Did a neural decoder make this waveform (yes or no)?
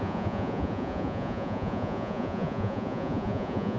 yes